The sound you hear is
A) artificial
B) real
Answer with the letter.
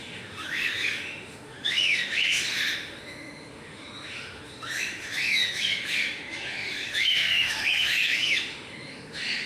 A